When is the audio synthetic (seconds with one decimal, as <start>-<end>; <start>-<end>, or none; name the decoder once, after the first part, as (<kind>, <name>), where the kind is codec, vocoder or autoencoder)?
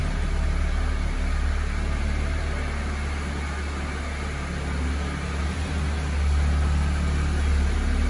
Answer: none